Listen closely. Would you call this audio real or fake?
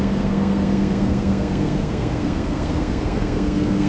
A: fake